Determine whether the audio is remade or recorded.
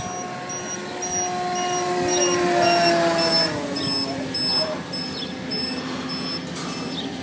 recorded